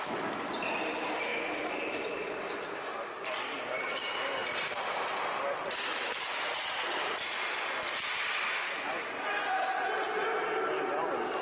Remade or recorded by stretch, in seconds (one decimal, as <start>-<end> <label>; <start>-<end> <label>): 0.0-11.4 recorded